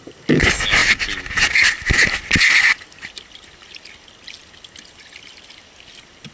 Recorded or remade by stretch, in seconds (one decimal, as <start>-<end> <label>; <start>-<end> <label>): 0.0-6.3 recorded